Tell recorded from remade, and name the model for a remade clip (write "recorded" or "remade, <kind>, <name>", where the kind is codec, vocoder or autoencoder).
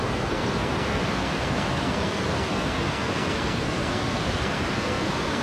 remade, codec, SNAC